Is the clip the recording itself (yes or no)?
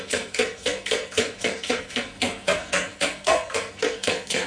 no